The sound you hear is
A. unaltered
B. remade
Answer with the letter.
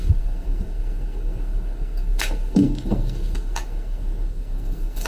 B